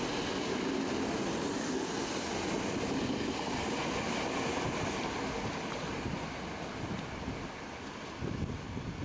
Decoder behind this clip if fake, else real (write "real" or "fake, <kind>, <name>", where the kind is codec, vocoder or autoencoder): real